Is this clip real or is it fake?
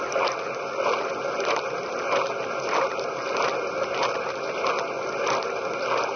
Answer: real